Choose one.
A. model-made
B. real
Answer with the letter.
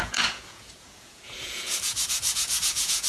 A